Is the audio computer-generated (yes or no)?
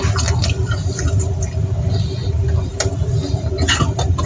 no